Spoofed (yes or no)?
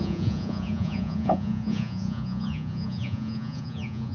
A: yes